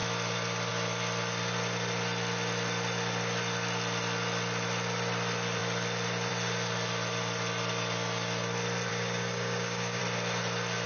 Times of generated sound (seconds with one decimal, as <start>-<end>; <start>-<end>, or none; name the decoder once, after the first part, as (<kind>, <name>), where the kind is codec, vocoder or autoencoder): 8.9-10.0 (codec, DAC)